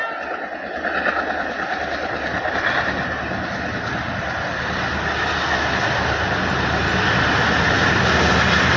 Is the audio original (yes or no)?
yes